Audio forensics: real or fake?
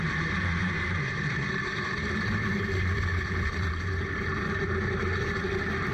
fake